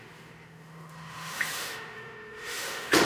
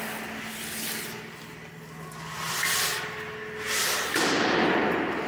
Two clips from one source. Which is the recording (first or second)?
second